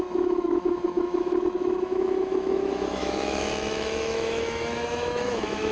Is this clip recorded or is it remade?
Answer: remade